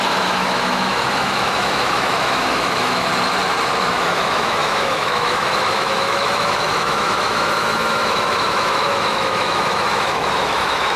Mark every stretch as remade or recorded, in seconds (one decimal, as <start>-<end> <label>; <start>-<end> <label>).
0.0-3.1 remade; 3.1-3.8 recorded; 3.8-11.0 remade